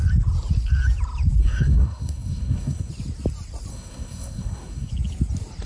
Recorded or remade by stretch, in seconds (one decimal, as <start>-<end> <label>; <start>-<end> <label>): 0.0-1.4 recorded; 1.4-2.9 remade; 2.9-3.7 recorded; 3.7-4.9 remade; 4.9-5.7 recorded

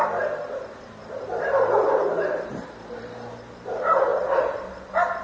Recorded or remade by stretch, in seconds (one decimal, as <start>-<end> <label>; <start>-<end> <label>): 0.0-5.2 recorded